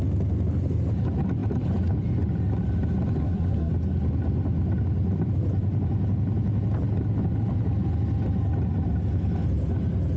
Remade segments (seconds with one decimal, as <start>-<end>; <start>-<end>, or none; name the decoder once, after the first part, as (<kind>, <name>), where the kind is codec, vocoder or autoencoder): 3.2-3.7 (codec, SNAC)